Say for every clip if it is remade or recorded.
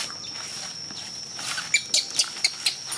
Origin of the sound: recorded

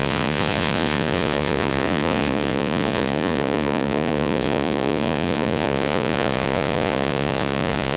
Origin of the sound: remade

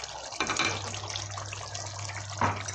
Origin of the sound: recorded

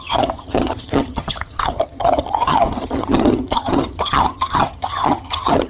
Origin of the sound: remade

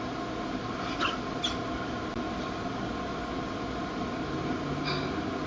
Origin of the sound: recorded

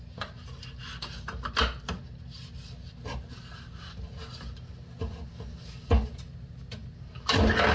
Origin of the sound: recorded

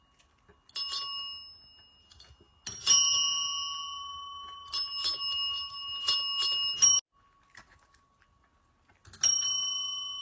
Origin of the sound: recorded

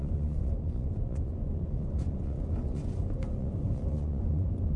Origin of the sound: remade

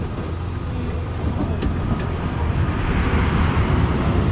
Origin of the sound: recorded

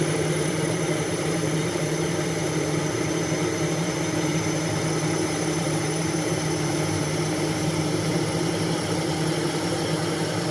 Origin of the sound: remade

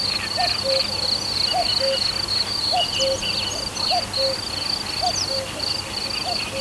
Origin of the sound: recorded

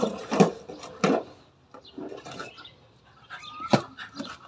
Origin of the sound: recorded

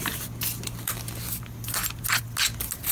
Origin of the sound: recorded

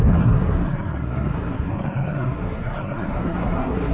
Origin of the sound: remade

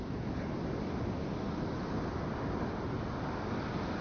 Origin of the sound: recorded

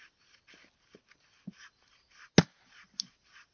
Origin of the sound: recorded